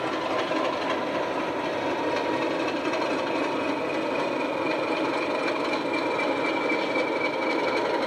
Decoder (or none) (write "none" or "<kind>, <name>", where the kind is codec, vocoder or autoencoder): none